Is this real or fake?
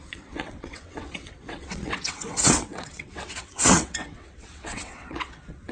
fake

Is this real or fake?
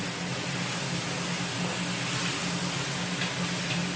real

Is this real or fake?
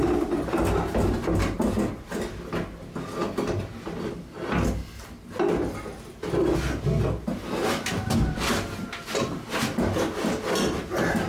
real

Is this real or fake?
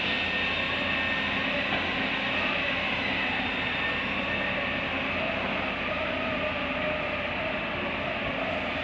real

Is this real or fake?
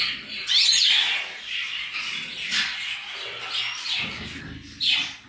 real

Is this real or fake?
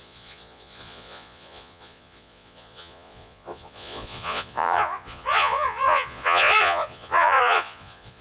fake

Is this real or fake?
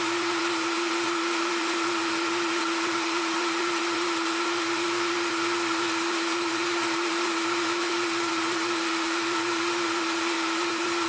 fake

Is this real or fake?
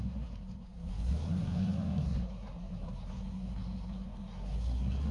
fake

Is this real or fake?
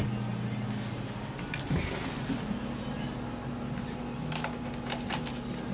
real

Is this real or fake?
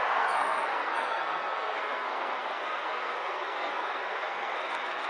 fake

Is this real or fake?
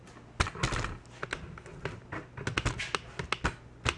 real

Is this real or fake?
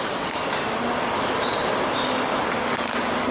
real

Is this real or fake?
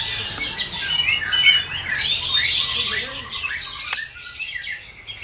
real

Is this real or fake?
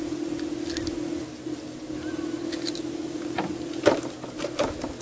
real